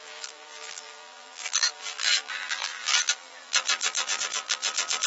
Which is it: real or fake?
fake